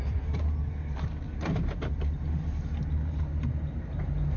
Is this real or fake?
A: real